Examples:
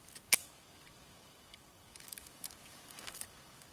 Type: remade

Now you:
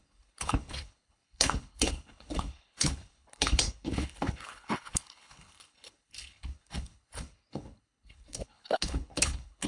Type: remade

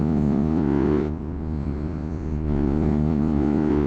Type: remade